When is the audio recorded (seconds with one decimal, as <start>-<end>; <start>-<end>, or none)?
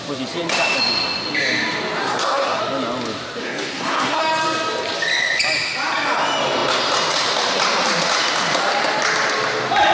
0.0-2.0; 2.6-3.4; 4.2-9.9